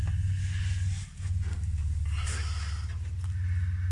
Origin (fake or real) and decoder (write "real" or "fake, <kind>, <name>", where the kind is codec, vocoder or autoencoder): real